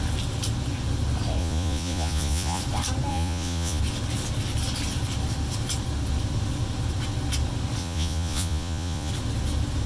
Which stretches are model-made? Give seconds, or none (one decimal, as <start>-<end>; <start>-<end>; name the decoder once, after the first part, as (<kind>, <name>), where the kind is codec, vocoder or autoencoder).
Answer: 1.4-2.6 (vocoder, Vocos); 3.1-3.8; 7.8-9.1